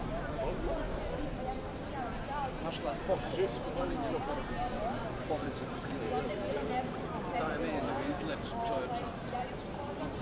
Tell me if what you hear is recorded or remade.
recorded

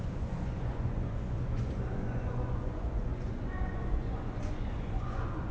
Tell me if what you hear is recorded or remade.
remade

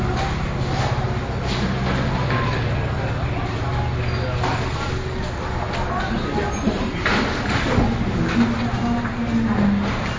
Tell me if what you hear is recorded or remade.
recorded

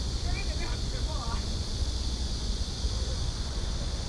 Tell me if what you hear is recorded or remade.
remade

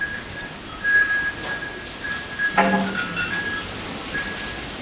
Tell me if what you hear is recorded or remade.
recorded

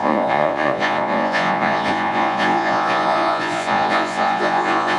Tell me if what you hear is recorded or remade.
remade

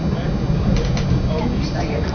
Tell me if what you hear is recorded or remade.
recorded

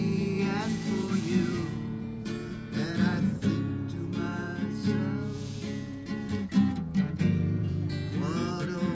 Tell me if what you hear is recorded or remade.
remade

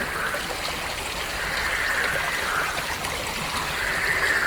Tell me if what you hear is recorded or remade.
recorded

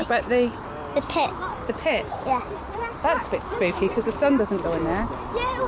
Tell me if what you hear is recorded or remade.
recorded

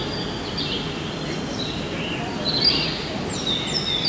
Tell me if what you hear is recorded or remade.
recorded